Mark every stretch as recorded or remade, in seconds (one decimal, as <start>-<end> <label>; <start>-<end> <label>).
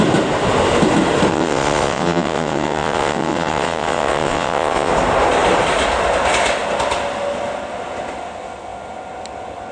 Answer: 0.0-1.3 recorded; 1.3-4.9 remade; 4.9-9.7 recorded